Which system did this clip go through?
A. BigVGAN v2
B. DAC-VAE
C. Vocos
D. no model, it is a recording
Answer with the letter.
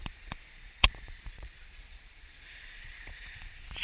C